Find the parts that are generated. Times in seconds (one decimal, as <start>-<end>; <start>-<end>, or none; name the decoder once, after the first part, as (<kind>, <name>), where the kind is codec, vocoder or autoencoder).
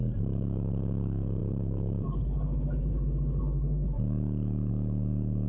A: none